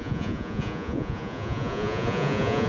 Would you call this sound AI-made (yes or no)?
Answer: yes